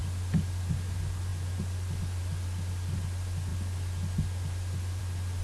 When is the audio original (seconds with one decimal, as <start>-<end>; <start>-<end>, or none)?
0.0-5.4